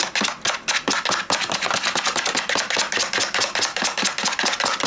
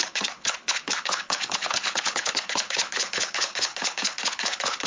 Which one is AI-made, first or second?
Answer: second